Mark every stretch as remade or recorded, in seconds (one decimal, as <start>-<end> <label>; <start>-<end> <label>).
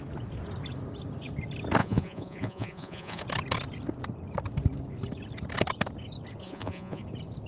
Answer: 0.0-1.8 recorded; 1.8-3.2 remade; 3.2-6.4 recorded; 6.4-7.0 remade; 7.0-7.5 recorded